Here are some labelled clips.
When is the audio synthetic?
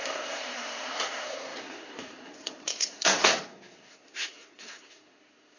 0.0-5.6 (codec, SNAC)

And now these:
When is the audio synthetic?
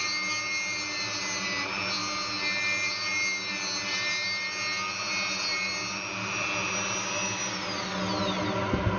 none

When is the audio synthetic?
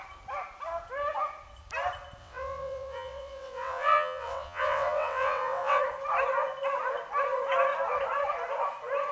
2.2-5.8 (vocoder, WaveNeXt)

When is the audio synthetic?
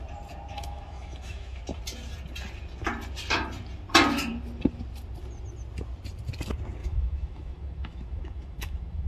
0.5-1.6 (autoencoder, DAC-VAE); 6.8-9.1